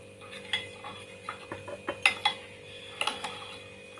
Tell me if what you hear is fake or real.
real